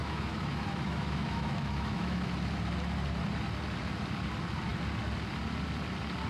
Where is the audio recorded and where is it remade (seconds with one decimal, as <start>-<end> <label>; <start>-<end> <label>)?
0.0-2.3 remade; 2.3-6.3 recorded